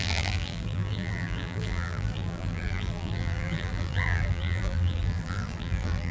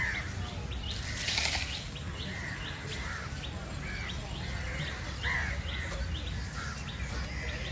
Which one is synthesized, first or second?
first